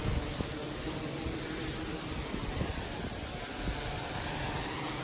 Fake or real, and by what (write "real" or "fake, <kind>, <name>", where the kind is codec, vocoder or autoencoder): real